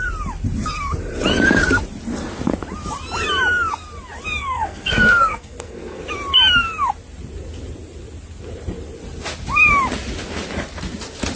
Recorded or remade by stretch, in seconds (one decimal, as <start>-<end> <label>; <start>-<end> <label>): 0.0-4.4 recorded; 4.4-6.0 remade; 6.0-11.4 recorded